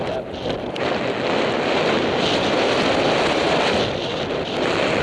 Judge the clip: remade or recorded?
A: recorded